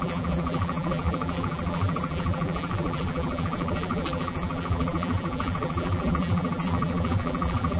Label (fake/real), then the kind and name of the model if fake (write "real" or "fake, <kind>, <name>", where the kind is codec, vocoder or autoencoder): fake, vocoder, BigVGAN v2